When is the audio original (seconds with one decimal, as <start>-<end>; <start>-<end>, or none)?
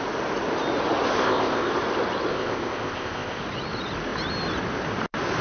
0.0-1.2; 1.7-2.3; 3.4-5.4